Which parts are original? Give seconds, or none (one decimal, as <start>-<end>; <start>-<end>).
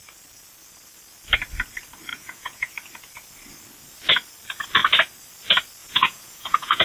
0.0-2.1; 2.7-5.8